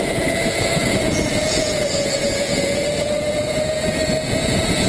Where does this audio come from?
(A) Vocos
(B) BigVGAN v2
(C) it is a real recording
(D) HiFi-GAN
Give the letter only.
A